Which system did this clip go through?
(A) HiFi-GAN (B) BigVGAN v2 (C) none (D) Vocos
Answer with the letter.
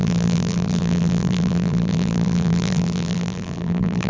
B